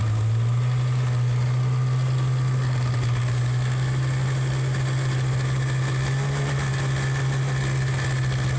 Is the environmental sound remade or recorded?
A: recorded